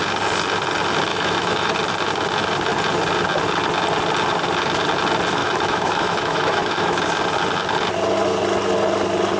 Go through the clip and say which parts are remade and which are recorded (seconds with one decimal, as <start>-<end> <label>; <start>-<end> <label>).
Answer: 0.0-1.1 recorded; 1.1-1.7 remade; 1.7-5.4 recorded; 5.4-7.0 remade; 7.0-9.4 recorded